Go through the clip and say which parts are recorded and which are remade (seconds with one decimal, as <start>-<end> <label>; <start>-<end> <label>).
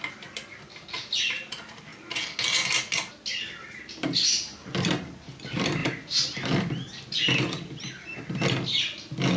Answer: 0.0-9.4 recorded